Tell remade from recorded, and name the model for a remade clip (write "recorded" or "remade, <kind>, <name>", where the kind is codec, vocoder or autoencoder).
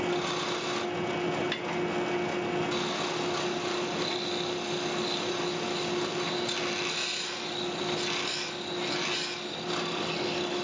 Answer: recorded